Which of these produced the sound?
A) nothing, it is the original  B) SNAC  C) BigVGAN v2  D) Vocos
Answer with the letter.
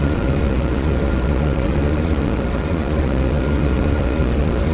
D